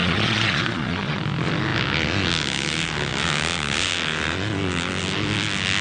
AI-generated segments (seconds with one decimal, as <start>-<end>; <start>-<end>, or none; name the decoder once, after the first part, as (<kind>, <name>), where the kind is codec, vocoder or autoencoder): 0.0-1.2 (vocoder, Vocos)